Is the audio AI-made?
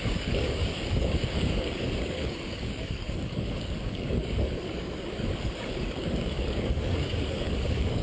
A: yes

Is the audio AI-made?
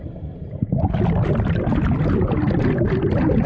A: no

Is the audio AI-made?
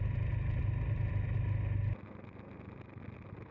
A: no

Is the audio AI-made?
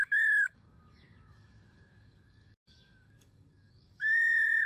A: yes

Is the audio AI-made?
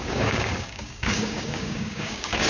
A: yes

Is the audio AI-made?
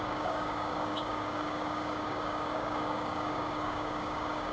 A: yes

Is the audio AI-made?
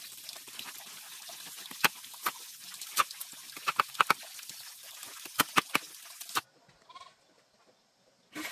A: no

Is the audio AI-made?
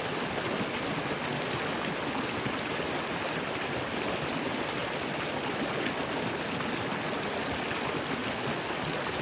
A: no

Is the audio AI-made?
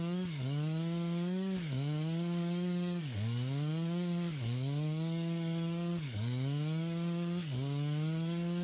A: yes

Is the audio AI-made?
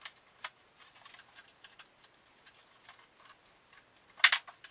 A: no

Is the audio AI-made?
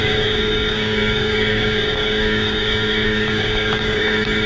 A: yes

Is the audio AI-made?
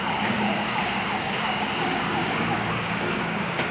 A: yes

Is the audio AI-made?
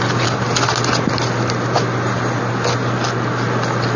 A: no